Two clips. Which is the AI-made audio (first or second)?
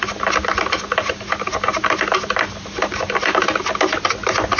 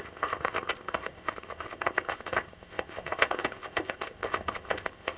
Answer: second